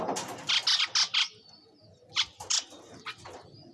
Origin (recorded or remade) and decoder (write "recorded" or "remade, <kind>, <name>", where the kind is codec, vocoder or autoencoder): recorded